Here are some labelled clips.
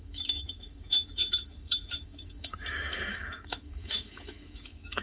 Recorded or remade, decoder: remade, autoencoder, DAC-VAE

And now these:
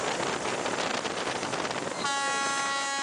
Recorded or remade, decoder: recorded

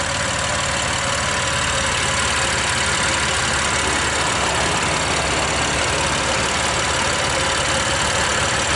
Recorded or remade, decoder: recorded